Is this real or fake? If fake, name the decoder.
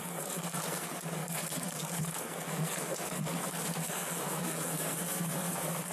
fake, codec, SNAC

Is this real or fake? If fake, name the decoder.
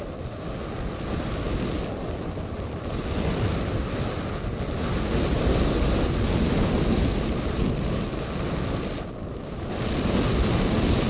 real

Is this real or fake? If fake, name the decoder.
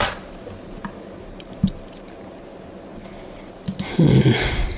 real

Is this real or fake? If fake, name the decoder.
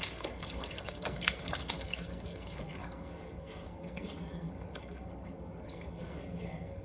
fake, codec, SNAC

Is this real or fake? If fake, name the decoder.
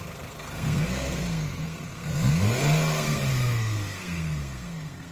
fake, codec, SNAC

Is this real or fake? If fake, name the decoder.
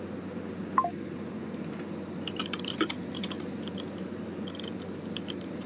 real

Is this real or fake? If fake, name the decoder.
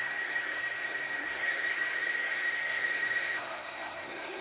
fake, codec, SNAC